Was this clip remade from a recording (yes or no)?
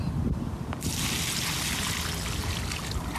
no